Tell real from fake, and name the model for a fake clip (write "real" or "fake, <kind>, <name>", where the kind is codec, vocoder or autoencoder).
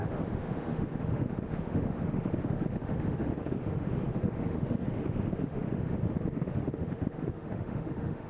fake, autoencoder, DAC-VAE